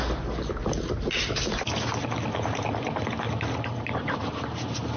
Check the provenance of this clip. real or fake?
real